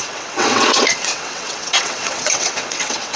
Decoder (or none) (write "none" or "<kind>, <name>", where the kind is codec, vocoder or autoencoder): vocoder, WaveNeXt